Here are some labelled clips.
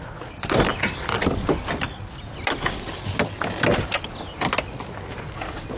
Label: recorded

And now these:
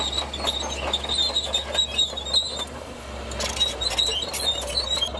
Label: recorded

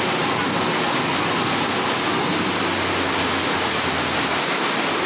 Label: recorded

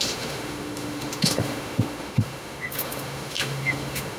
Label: remade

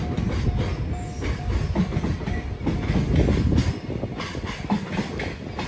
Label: recorded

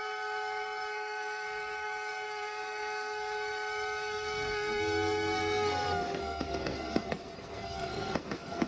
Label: remade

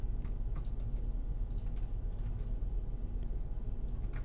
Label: recorded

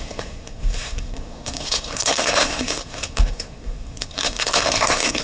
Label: remade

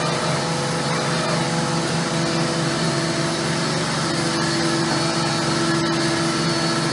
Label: recorded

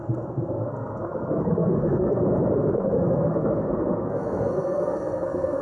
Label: remade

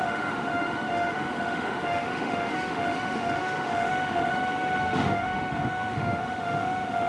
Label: remade